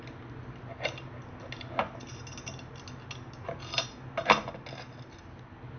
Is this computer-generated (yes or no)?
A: no